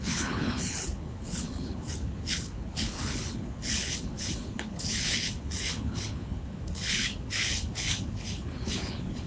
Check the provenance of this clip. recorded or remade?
remade